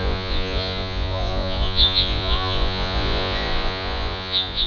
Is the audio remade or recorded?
remade